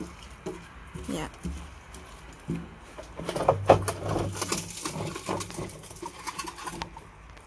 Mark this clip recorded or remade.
recorded